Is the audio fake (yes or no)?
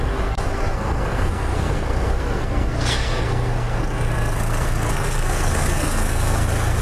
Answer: yes